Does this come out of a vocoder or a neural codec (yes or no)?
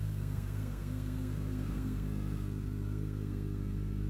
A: yes